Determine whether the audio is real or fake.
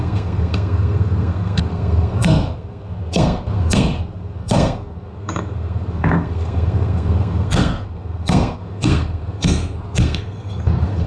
fake